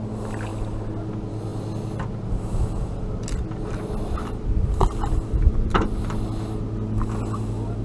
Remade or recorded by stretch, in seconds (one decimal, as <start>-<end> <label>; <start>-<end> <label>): 0.0-7.8 recorded